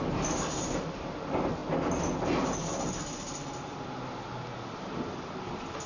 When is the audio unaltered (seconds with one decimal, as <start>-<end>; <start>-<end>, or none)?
0.0-5.9